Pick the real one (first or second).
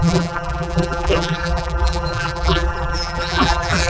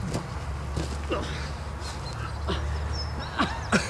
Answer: second